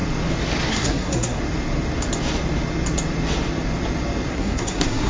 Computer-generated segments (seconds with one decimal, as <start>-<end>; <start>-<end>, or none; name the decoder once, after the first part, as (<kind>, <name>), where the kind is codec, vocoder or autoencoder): 0.7-1.4 (codec, SNAC); 4.3-5.1